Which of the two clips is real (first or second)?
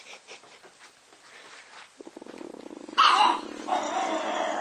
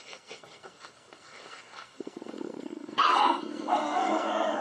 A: first